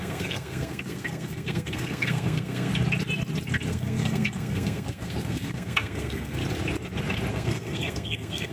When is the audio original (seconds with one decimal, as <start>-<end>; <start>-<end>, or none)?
2.7-3.7; 6.4-7.3